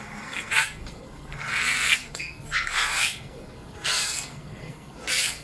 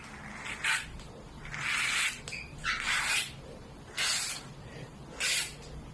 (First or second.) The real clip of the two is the second